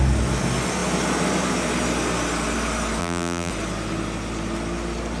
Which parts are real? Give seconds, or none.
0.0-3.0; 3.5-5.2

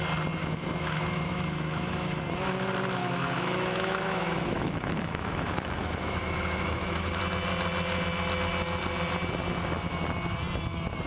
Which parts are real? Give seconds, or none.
0.0-0.4; 2.2-3.0; 7.2-11.1

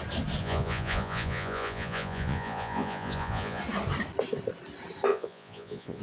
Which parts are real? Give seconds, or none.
0.0-0.4; 3.6-5.1